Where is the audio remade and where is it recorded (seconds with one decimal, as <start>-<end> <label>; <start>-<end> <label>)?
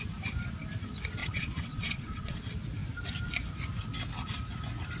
0.0-1.2 recorded; 1.2-2.4 remade; 2.4-5.0 recorded